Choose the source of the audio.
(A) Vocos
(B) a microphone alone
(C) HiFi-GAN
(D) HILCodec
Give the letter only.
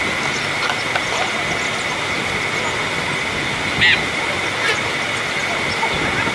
B